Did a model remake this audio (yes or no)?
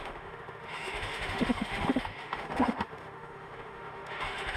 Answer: yes